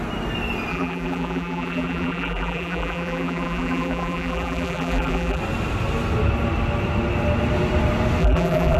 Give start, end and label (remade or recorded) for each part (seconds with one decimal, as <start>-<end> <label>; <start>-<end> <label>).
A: 0.0-0.7 recorded; 0.7-5.4 remade; 5.4-8.2 recorded; 8.2-8.8 remade